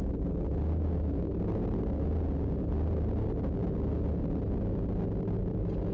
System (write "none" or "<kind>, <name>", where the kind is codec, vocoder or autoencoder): none